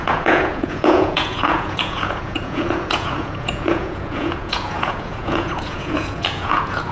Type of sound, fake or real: fake